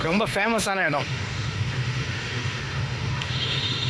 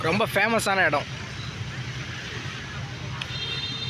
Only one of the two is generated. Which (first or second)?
first